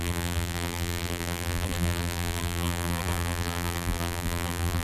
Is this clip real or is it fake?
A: fake